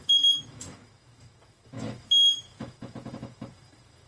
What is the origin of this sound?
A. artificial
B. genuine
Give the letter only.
A